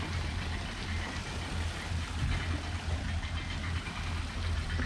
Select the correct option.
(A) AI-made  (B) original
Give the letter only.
B